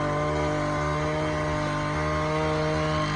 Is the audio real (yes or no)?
yes